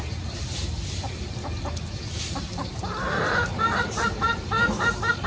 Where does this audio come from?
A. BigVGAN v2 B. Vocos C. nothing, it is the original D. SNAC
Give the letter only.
A